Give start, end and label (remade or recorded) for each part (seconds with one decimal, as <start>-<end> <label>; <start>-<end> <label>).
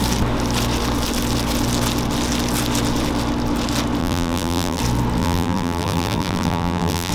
0.0-4.0 recorded; 4.0-4.8 remade; 4.8-5.2 recorded; 5.2-7.1 remade